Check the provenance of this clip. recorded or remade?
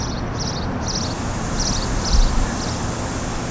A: recorded